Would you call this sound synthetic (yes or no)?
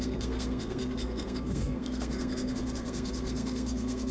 yes